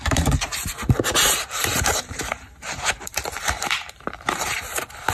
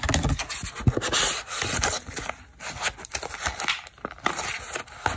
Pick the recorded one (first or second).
second